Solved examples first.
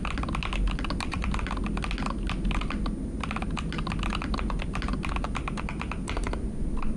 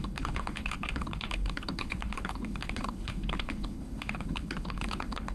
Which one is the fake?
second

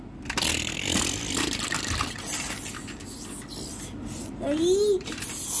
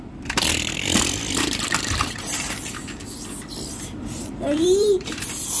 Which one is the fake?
second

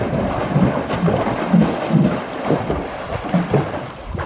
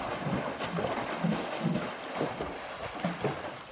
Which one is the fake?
first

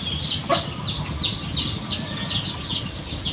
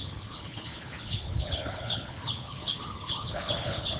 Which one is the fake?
second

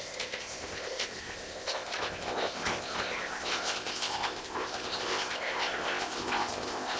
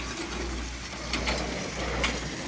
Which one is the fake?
first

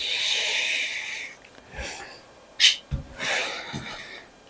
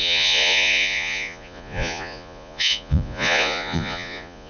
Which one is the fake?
second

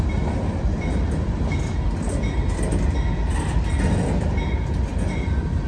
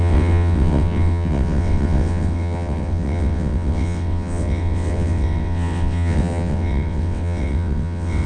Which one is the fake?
second